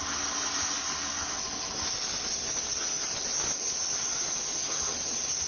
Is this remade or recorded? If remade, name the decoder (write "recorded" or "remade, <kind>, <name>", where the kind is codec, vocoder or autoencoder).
recorded